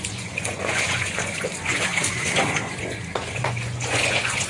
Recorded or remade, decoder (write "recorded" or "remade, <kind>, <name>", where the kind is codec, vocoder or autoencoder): remade, vocoder, Vocos